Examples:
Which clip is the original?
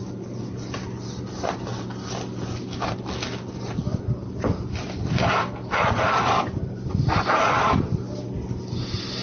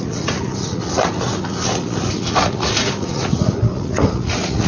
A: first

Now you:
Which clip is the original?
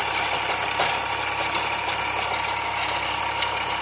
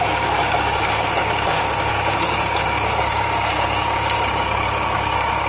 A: first